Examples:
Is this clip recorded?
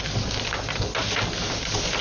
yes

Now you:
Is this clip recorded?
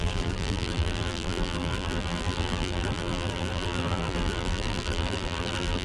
no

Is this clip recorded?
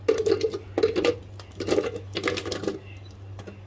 yes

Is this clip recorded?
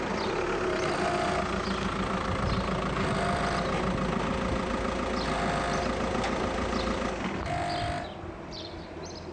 yes